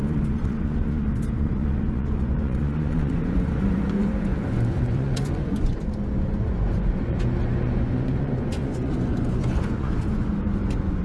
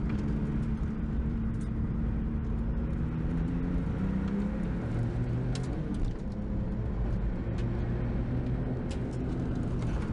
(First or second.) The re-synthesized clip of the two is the first